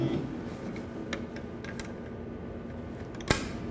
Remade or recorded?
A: recorded